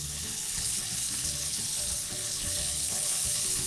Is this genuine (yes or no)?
no